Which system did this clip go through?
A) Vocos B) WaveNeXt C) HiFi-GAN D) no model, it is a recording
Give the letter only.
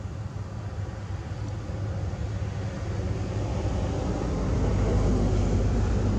D